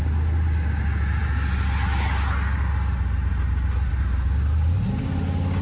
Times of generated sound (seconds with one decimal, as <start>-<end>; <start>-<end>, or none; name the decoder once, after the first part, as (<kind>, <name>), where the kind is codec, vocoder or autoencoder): none

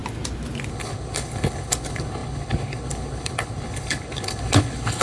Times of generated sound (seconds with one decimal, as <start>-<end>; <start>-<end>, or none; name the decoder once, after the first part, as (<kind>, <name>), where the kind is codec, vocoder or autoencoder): 0.7-5.0 (codec, HILCodec)

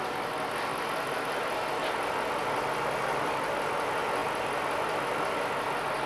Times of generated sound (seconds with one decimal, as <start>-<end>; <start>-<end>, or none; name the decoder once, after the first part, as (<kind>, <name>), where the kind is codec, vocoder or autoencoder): none

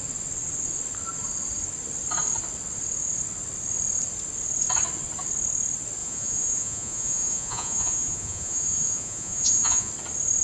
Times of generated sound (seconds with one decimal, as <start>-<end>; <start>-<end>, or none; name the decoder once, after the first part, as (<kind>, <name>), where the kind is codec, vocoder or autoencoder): 6.0-9.9 (vocoder, Vocos)

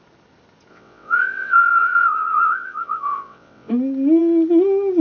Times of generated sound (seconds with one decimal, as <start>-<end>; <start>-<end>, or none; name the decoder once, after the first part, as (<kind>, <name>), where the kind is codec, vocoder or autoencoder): 0.7-3.7 (vocoder, WaveNeXt)

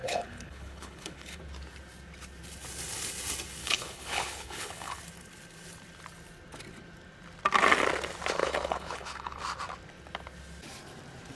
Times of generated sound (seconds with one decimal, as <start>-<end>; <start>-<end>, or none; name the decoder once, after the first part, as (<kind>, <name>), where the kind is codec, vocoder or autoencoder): 0.0-1.4 (codec, HILCodec); 3.6-5.0; 8.4-9.4

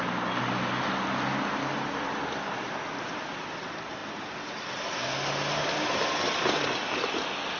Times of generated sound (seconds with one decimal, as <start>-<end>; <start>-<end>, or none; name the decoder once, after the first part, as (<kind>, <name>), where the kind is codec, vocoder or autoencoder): none